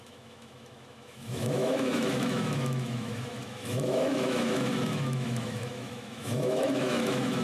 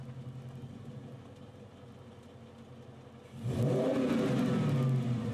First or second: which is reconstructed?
first